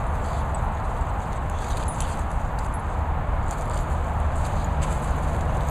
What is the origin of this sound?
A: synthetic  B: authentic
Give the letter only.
B